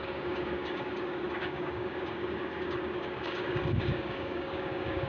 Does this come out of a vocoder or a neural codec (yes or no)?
yes